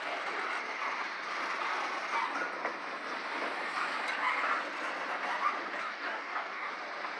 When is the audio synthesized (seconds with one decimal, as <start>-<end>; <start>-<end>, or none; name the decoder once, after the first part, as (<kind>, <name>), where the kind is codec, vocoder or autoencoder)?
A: 5.8-6.7 (codec, DAC)